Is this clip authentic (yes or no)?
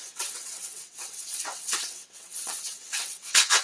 no